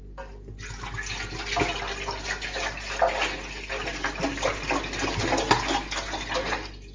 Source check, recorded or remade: recorded